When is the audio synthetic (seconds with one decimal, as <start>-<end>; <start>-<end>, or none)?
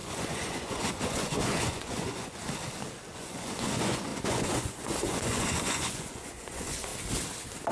0.0-2.4; 3.2-6.9